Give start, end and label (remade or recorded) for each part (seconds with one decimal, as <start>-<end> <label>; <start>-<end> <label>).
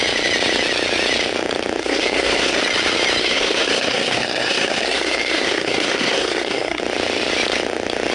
0.0-1.8 recorded; 1.8-2.6 remade; 2.6-3.2 recorded; 3.2-6.8 remade; 6.8-8.1 recorded